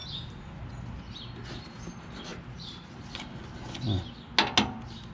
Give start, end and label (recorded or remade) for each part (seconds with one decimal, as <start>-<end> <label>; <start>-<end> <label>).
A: 0.0-2.3 recorded; 2.3-2.9 remade; 2.9-5.1 recorded